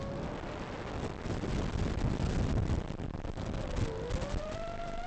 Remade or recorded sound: recorded